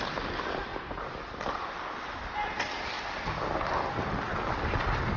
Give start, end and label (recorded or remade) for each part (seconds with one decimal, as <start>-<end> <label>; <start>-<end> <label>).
0.0-5.2 recorded